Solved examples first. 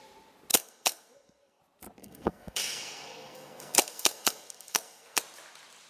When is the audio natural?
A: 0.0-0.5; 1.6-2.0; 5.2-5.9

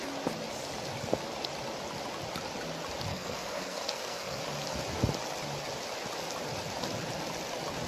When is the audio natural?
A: 0.0-3.1; 4.4-7.9

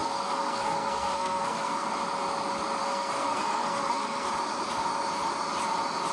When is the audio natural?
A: 1.9-2.8; 4.3-6.1

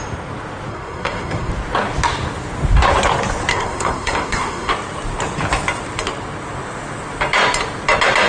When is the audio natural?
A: 0.0-0.7; 1.5-3.5; 4.7-8.3

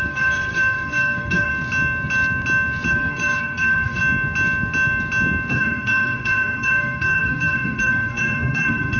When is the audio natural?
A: 1.5-2.9; 4.0-5.5

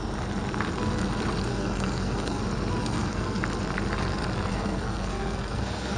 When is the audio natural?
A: 0.0-1.5; 2.4-2.8; 3.4-4.5

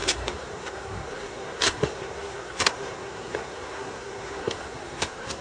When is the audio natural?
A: none

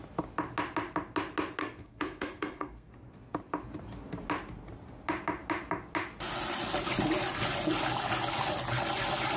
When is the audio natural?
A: 0.0-1.6; 2.9-9.4